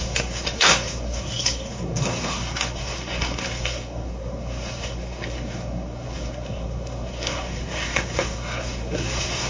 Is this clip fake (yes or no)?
yes